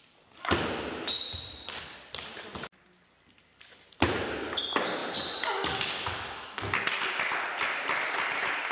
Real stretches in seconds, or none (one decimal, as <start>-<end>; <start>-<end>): 0.0-8.7